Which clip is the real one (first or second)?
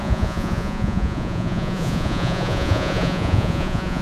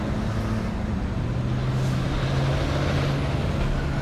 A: second